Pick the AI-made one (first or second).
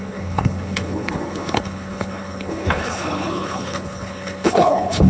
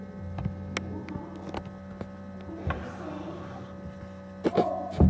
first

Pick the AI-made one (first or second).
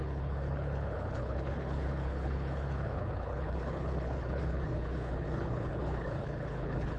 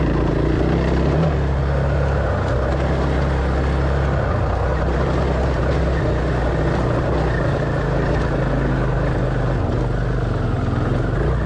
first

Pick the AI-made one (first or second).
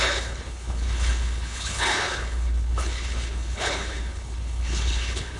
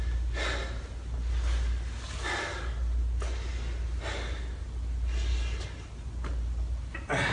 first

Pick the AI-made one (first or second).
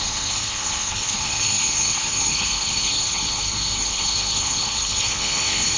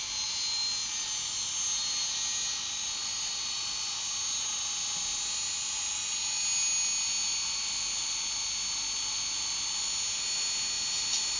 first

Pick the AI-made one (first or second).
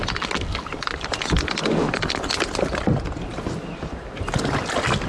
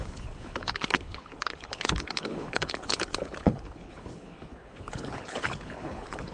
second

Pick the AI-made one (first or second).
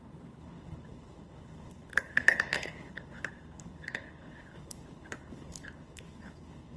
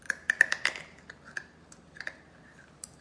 first